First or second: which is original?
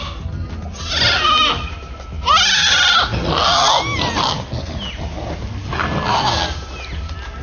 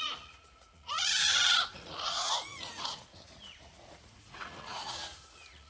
first